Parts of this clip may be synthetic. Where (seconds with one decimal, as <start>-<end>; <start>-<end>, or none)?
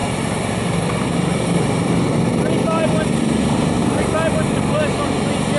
0.0-3.3